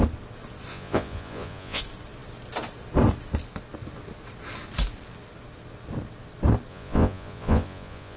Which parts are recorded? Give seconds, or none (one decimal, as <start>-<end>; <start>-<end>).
0.0-0.7; 1.8-6.7